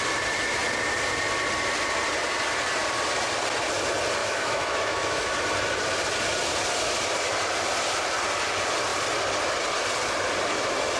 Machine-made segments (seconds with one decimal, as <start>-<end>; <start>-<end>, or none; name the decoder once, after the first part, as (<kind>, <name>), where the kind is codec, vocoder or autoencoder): 4.2-5.3 (autoencoder, DAC-VAE)

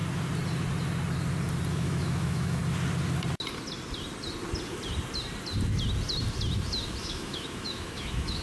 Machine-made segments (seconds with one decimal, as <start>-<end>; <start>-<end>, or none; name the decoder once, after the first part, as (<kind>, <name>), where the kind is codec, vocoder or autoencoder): 1.7-2.6 (autoencoder, DAC-VAE); 7.0-8.4